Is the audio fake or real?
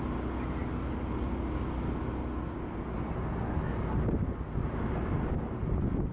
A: real